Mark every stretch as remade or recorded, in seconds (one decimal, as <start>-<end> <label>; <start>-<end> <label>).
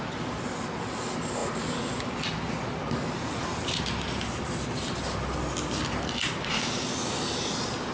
0.0-7.9 recorded